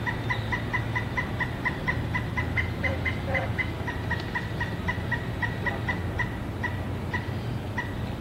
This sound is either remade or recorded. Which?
recorded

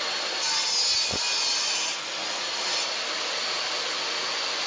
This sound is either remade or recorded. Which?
recorded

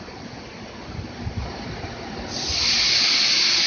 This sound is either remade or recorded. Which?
recorded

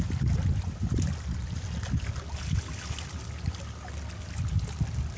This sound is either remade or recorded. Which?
recorded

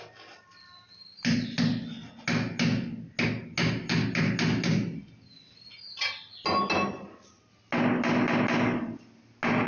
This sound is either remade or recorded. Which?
recorded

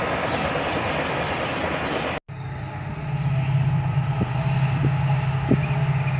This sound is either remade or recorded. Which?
recorded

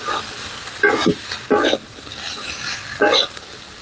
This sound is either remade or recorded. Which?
recorded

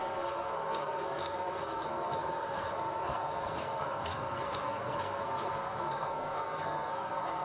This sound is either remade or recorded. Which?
remade